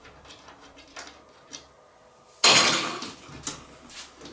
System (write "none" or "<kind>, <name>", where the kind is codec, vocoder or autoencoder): none